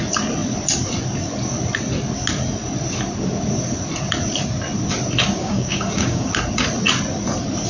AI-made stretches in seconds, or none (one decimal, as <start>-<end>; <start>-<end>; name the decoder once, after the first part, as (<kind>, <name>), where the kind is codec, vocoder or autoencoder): 5.4-6.3 (codec, DAC)

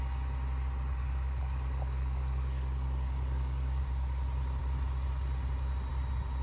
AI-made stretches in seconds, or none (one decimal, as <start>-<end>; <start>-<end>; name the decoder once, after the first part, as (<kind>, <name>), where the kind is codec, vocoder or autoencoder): 1.0-3.8 (codec, DAC)